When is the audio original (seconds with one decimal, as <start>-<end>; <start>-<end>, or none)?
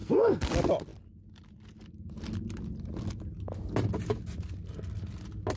0.5-5.6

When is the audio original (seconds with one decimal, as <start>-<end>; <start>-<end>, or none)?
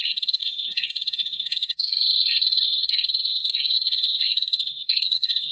none